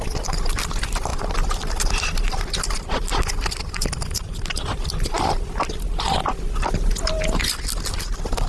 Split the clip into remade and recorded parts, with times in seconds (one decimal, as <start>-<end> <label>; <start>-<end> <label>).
0.0-3.6 recorded; 3.6-4.6 remade; 4.6-8.5 recorded